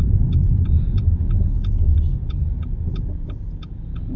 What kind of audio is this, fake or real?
fake